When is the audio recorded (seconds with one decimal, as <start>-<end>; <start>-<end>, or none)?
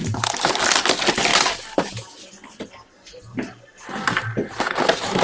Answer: 0.0-5.2